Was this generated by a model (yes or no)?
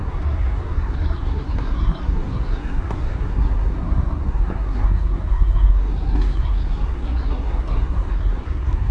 yes